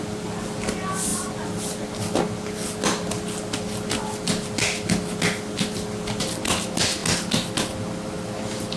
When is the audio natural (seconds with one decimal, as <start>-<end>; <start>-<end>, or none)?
0.0-8.8